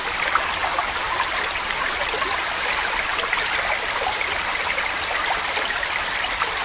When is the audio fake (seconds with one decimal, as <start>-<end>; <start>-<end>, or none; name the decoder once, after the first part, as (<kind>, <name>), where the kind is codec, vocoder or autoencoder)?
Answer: none